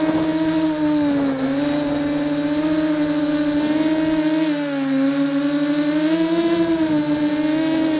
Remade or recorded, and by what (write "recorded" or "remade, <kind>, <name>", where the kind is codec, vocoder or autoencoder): recorded